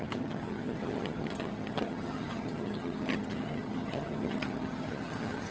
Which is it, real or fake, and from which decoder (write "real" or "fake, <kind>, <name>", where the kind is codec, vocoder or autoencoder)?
fake, vocoder, HiFi-GAN